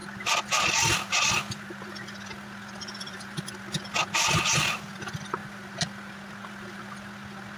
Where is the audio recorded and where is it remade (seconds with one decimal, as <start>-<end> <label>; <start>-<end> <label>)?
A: 0.0-7.6 recorded